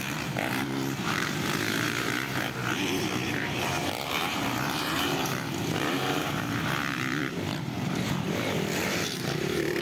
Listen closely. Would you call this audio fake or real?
fake